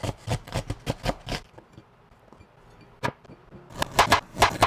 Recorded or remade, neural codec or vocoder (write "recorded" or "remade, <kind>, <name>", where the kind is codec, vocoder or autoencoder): recorded